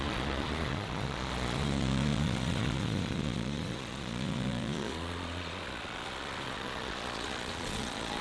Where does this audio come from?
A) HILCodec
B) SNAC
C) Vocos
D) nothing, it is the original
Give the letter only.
C